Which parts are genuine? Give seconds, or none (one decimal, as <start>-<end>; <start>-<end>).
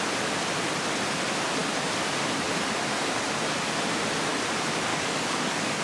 0.0-4.9